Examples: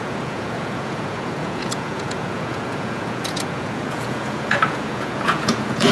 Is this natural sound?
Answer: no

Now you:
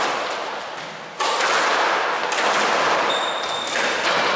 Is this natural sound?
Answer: yes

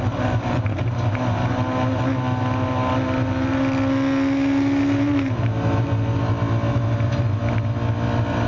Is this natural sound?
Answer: yes